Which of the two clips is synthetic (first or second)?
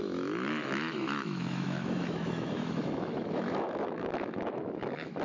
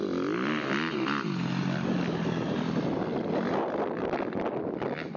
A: first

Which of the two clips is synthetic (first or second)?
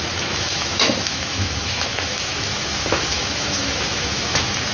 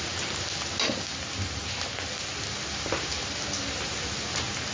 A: first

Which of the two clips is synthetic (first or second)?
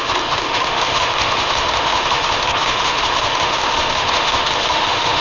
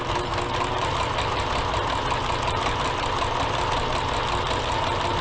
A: first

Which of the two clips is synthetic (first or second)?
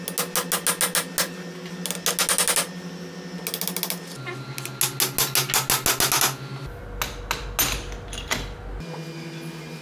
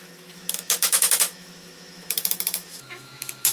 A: second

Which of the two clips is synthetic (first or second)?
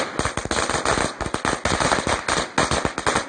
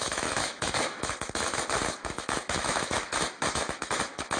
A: second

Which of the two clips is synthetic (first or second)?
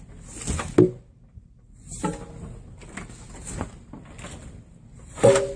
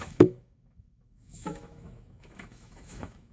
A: second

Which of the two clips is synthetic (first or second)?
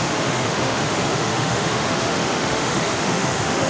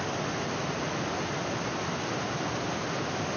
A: first